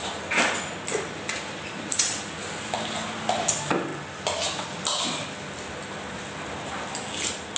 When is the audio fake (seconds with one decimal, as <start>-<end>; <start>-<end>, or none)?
none